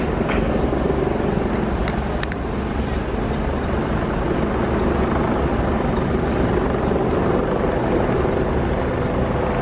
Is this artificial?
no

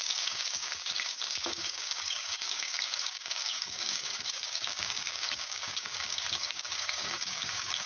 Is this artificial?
yes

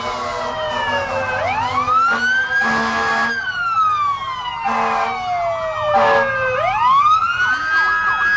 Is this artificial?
no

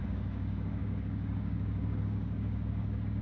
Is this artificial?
yes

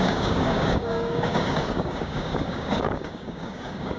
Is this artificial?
yes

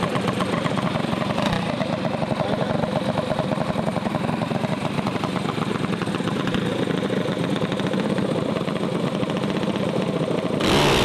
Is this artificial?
no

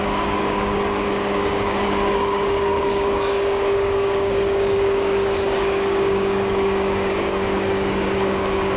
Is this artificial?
yes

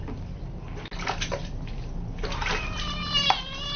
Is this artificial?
no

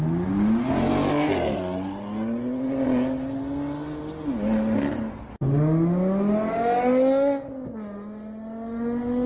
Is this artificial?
no